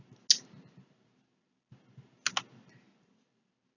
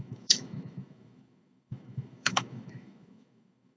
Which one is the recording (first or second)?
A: first